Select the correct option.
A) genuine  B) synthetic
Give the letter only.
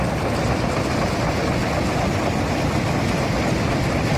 A